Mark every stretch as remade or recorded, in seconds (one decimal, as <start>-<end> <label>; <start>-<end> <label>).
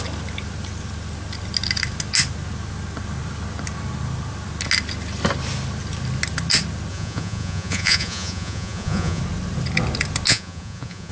0.0-6.9 recorded; 6.9-9.2 remade; 9.2-10.3 recorded; 10.3-11.1 remade